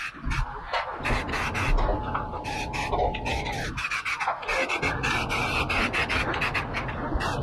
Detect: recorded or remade recorded